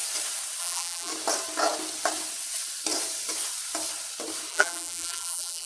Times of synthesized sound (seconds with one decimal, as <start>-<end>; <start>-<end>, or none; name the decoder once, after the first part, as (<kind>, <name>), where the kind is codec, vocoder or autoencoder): 0.6-1.1 (vocoder, BigVGAN v2); 4.5-5.7